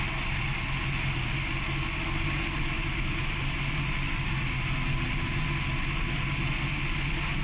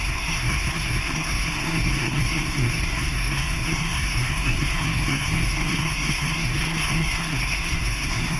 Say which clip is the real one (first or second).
first